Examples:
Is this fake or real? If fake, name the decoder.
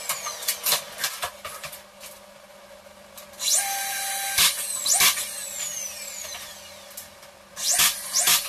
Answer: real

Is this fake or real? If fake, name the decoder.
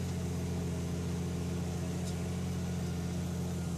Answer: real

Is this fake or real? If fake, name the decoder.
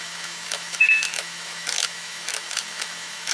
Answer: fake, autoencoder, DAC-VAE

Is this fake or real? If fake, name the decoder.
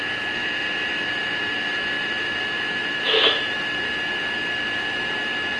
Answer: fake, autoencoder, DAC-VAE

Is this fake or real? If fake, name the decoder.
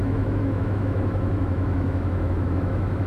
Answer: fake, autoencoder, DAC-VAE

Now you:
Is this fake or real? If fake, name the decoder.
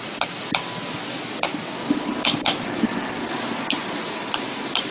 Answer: real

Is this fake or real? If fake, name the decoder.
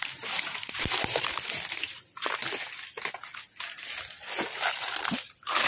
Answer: real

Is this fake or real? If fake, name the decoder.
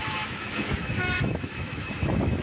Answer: fake, autoencoder, DAC-VAE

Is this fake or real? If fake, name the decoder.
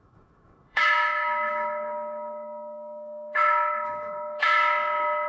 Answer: fake, autoencoder, DAC-VAE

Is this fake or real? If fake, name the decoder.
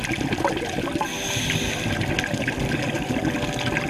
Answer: real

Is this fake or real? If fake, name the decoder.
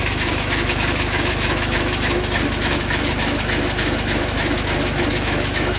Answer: fake, autoencoder, DAC-VAE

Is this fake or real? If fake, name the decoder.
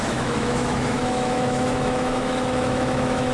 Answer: fake, autoencoder, DAC-VAE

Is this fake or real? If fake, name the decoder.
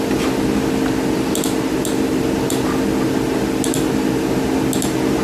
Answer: real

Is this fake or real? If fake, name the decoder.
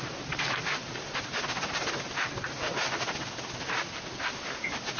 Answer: real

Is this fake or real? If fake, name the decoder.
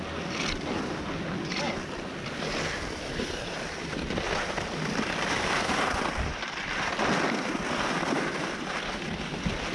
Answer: real